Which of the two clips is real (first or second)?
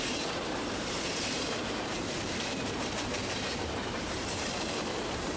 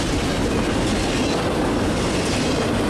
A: second